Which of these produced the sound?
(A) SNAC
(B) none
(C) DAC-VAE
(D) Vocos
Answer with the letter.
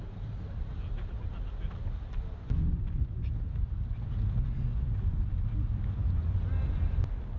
B